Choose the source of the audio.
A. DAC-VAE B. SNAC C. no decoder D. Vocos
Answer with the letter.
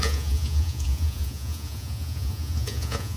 D